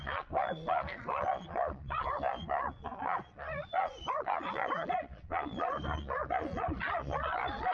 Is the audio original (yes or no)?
no